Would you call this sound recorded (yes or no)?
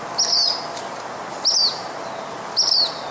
yes